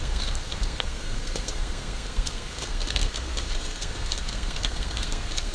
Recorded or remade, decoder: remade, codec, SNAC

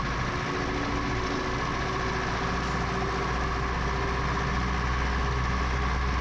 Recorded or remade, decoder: recorded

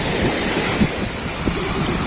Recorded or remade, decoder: remade, vocoder, BigVGAN v2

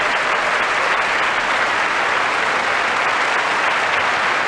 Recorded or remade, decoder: recorded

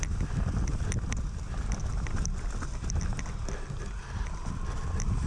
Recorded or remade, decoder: recorded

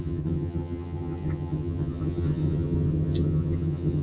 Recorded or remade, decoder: remade, vocoder, HiFi-GAN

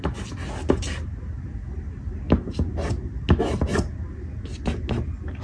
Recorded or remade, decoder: recorded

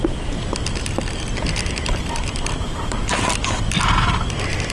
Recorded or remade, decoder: recorded